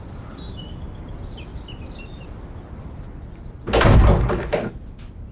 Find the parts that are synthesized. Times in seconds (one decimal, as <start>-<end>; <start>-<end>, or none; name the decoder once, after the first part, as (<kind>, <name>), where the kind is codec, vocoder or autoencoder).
none